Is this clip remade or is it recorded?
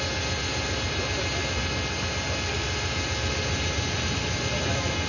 recorded